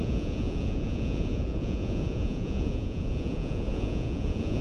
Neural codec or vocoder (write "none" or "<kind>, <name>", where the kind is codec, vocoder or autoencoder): vocoder, Vocos